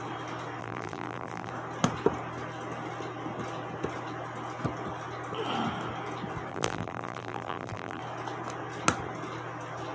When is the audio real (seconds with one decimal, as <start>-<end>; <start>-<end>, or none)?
0.0-0.6; 1.5-6.5; 8.0-9.9